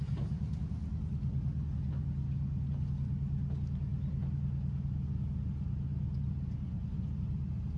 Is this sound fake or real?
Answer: real